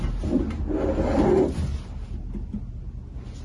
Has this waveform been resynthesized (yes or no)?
no